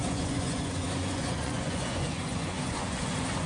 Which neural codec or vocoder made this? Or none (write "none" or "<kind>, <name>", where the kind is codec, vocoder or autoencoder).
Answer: vocoder, Vocos